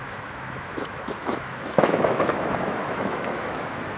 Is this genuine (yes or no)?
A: no